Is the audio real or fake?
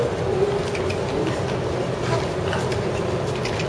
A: real